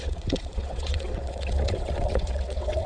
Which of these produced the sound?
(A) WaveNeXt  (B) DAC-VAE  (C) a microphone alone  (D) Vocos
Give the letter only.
A